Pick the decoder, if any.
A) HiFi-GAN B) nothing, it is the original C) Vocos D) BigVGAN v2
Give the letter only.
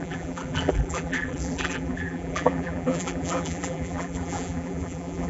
D